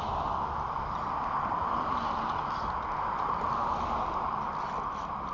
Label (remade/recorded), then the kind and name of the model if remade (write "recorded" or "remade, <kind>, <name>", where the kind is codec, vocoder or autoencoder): recorded